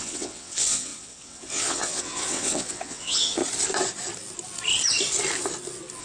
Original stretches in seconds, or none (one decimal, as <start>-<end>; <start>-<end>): 3.4-6.0